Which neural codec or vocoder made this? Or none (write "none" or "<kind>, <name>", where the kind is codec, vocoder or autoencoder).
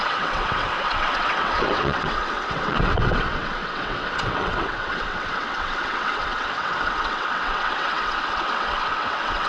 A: vocoder, WaveNeXt